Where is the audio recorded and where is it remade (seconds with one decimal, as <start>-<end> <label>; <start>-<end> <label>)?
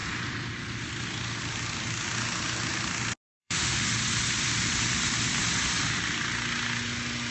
0.0-3.4 recorded; 3.4-3.9 remade; 3.9-7.3 recorded